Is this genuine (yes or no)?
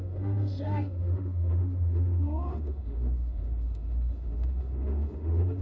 no